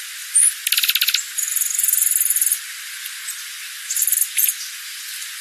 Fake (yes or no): no